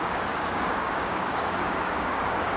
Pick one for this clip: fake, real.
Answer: fake